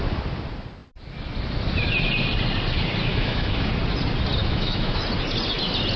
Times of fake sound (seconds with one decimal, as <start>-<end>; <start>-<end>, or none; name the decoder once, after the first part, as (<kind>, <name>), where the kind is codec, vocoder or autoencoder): 3.1-3.7 (autoencoder, DAC-VAE); 4.4-5.0